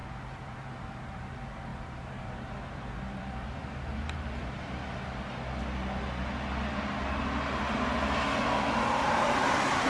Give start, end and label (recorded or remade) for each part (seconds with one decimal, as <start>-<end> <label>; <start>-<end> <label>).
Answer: 0.0-1.7 remade; 1.7-2.2 recorded; 2.2-4.8 remade; 4.8-8.7 recorded; 8.7-9.9 remade